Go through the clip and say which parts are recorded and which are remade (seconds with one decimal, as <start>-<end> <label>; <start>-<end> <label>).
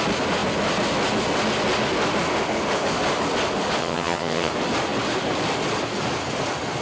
0.0-3.8 recorded; 3.8-4.5 remade; 4.5-6.8 recorded